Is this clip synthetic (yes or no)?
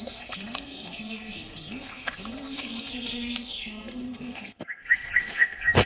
yes